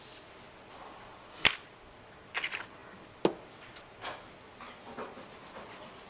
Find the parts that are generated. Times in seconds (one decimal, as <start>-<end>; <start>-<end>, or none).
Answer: none